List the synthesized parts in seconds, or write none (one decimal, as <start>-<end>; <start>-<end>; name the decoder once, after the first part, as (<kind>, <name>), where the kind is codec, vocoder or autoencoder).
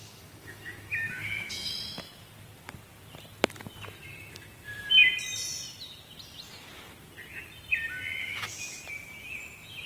0.0-1.7 (autoencoder, DAC-VAE); 8.2-8.8